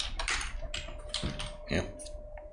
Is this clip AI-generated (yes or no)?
no